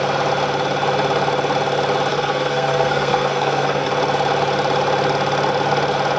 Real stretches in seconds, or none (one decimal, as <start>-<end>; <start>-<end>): 0.0-2.1; 3.9-6.2